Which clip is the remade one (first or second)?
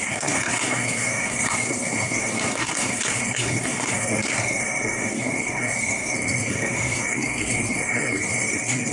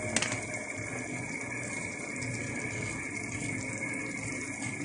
first